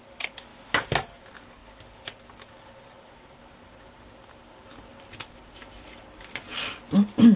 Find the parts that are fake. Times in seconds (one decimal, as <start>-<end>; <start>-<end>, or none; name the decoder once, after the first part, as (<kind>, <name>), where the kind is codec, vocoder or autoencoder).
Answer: none